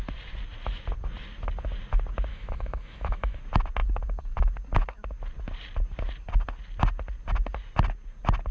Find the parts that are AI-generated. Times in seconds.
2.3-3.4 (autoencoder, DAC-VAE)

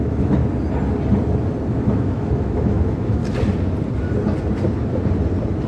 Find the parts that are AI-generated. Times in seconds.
0.0-0.4 (autoencoder, DAC-VAE); 1.8-3.2